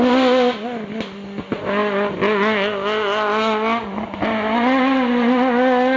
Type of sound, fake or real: real